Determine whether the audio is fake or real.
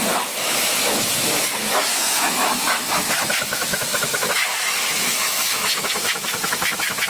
fake